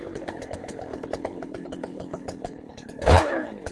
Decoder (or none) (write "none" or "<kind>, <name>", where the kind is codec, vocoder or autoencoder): codec, HILCodec